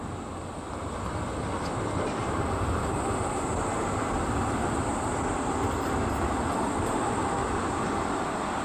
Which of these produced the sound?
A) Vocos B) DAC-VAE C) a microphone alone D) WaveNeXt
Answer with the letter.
C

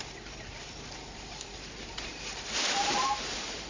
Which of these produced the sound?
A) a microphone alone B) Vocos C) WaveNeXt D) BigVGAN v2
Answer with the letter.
D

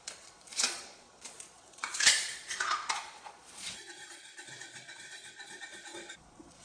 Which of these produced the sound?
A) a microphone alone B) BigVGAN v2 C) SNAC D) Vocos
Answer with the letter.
D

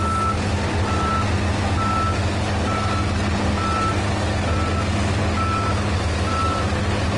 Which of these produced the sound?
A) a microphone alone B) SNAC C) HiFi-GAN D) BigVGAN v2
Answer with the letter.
A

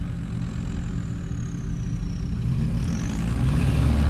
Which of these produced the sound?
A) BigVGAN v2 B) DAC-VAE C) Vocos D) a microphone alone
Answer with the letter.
D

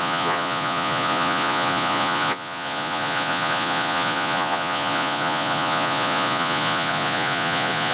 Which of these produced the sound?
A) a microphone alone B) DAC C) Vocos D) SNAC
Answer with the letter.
C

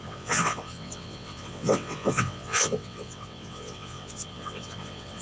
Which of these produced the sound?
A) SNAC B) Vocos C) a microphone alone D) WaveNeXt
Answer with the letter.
D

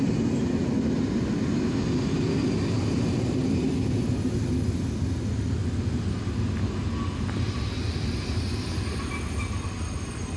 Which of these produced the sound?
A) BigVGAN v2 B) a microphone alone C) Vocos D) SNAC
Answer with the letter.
B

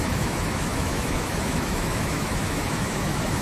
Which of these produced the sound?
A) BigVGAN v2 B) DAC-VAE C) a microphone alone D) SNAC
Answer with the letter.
B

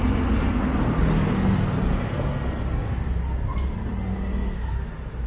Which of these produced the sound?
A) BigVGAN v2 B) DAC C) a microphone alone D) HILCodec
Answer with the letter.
C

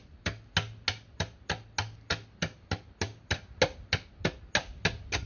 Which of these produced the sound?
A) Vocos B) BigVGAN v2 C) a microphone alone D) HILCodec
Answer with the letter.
C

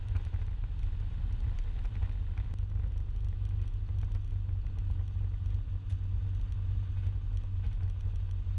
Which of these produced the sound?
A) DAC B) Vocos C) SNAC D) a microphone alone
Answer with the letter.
D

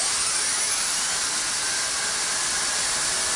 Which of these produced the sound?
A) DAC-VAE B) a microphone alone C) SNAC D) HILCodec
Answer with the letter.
B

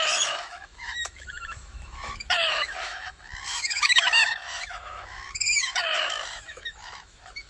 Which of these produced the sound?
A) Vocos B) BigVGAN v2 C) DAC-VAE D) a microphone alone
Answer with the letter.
C